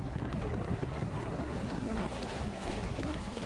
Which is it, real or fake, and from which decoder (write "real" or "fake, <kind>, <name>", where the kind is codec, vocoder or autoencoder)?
fake, codec, SNAC